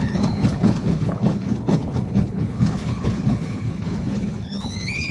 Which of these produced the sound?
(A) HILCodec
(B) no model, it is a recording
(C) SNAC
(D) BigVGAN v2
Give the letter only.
A